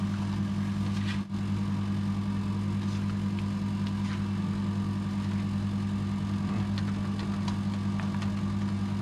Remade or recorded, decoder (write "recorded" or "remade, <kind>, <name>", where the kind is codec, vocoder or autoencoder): recorded